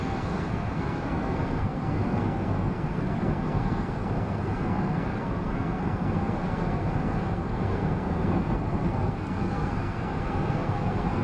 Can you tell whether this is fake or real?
fake